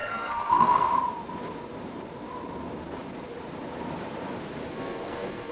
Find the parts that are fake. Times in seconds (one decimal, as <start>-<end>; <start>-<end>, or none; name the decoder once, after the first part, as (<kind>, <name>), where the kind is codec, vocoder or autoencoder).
0.0-0.9 (codec, SNAC); 4.7-5.5